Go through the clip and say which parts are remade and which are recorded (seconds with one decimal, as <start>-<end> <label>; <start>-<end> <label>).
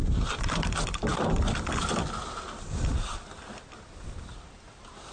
0.0-5.1 recorded